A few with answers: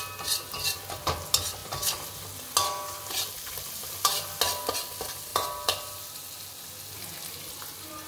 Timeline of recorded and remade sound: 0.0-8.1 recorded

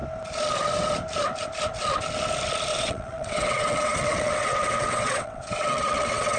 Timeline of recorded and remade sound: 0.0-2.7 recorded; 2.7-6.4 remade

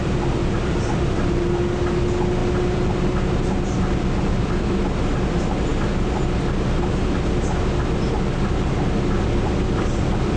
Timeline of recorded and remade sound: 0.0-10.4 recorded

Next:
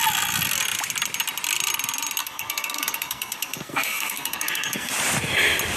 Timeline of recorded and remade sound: 0.0-2.2 recorded; 2.2-4.9 remade; 4.9-5.8 recorded

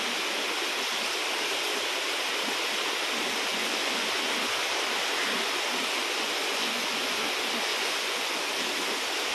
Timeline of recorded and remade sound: 0.0-3.5 recorded; 3.5-4.1 remade; 4.1-6.0 recorded; 6.0-7.2 remade; 7.2-7.7 recorded; 7.7-8.4 remade; 8.4-9.3 recorded